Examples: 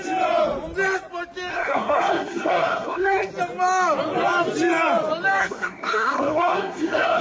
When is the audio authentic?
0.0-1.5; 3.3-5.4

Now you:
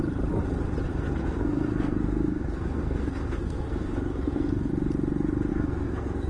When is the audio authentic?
0.0-0.9; 4.7-5.5

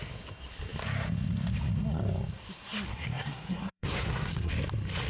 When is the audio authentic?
0.0-2.9; 4.5-5.1

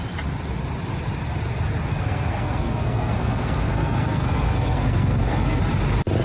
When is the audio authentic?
0.0-1.9; 5.6-6.2

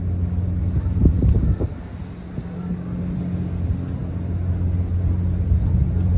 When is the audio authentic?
0.0-6.2

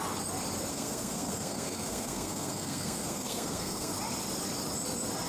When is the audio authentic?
0.0-0.7; 3.9-5.3